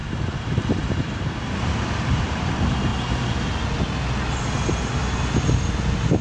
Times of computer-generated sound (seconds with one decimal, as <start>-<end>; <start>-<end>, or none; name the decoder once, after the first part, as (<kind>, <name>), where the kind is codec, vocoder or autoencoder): 0.0-2.5 (vocoder, BigVGAN v2)